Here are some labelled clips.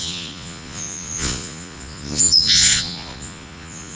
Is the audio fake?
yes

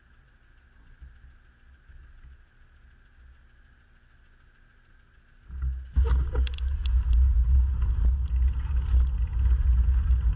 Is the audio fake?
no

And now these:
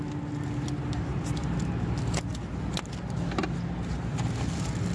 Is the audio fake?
no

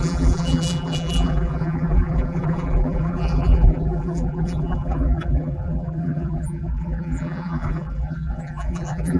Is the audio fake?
yes